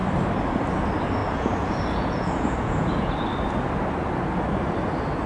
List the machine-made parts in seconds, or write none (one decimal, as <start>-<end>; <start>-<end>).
1.2-3.1

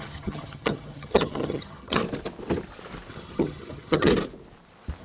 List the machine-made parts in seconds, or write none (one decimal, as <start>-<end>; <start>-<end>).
0.0-2.0; 3.1-4.1

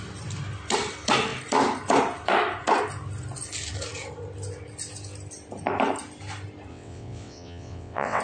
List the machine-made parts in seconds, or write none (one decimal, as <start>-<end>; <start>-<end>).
6.7-8.2

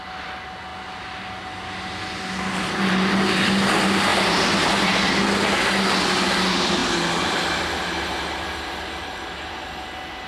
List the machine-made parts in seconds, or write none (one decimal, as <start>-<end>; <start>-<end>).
none

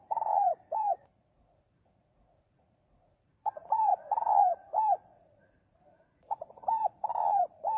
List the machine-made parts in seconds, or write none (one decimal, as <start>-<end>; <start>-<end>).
0.0-7.8

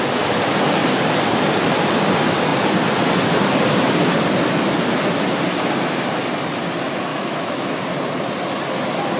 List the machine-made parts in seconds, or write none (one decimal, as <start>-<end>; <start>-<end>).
7.1-7.8

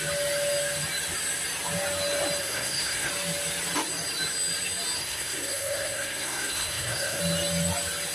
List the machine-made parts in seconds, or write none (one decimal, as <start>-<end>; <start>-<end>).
2.4-3.1; 5.0-7.2

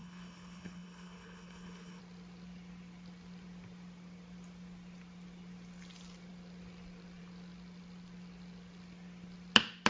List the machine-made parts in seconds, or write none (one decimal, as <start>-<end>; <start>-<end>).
0.0-2.0